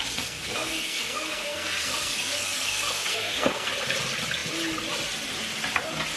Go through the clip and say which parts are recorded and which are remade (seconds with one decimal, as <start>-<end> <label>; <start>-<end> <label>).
0.0-3.7 remade; 3.7-6.2 recorded